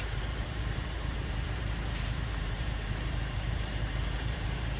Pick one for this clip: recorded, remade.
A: remade